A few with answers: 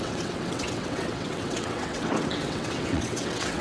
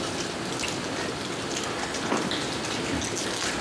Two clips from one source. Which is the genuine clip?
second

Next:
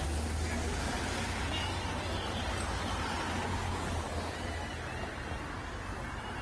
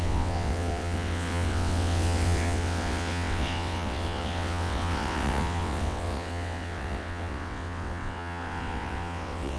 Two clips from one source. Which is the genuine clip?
first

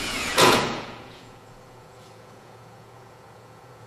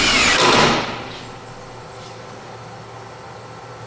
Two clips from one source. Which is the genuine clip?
second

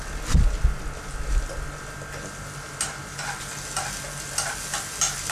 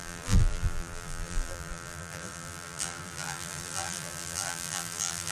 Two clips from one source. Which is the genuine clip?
first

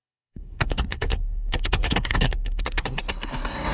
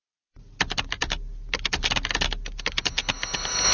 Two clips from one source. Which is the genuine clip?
second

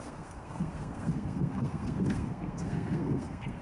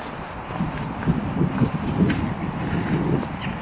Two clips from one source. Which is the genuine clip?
second